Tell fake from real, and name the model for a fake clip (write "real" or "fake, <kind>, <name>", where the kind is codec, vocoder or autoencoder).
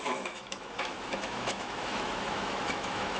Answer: fake, autoencoder, DAC-VAE